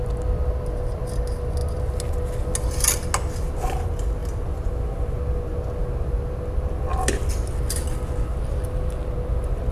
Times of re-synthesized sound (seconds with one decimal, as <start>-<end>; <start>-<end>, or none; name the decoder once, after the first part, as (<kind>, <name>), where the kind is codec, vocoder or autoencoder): none